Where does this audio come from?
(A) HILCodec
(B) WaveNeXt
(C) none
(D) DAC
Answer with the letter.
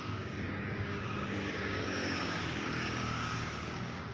D